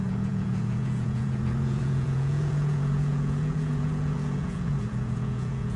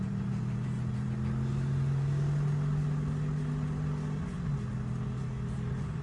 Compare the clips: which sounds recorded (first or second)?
second